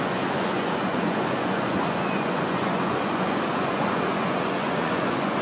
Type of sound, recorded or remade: remade